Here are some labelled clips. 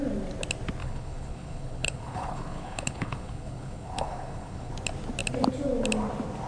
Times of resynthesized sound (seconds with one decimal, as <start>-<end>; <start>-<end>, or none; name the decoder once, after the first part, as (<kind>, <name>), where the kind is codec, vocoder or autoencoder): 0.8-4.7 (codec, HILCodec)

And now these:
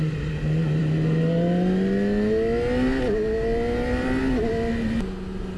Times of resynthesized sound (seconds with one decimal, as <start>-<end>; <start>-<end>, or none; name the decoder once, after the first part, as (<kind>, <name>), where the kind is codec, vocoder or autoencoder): none

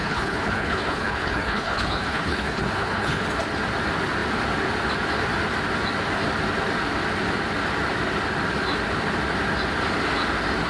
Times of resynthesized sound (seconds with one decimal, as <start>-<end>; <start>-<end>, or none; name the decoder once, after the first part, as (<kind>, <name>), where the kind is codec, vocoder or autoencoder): 0.0-3.2 (codec, HILCodec)